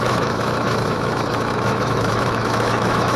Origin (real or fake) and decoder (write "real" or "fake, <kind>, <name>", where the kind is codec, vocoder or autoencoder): fake, autoencoder, DAC-VAE